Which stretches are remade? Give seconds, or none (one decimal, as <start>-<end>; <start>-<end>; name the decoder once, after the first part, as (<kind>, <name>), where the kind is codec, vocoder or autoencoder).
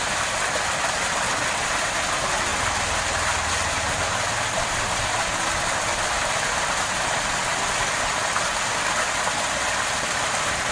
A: none